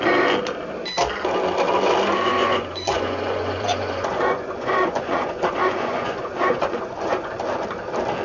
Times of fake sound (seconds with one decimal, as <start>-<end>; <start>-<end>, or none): 2.4-7.3